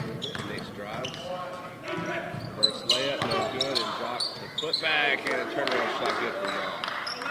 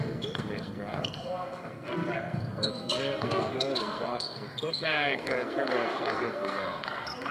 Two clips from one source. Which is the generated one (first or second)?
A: second